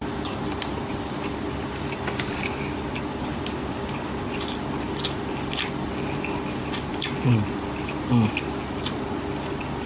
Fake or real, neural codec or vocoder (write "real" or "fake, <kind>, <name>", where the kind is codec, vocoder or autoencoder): real